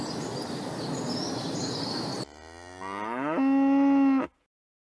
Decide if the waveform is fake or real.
real